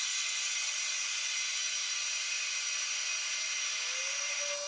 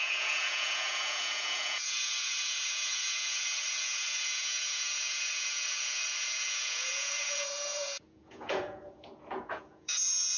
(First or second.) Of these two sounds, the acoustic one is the first